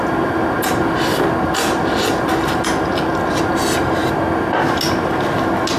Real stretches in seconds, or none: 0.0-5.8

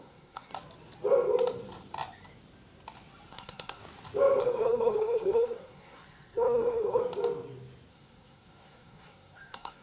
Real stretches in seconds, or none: 0.5-3.3; 3.8-4.4; 7.0-7.9

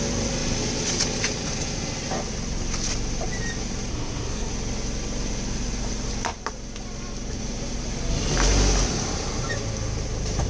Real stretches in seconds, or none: 0.0-3.9; 4.5-10.5

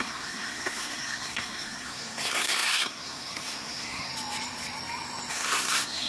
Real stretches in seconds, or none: 4.1-5.3

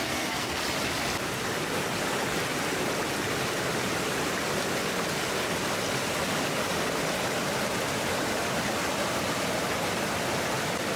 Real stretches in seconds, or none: 0.6-11.0

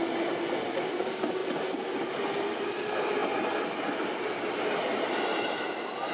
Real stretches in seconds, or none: 0.0-6.1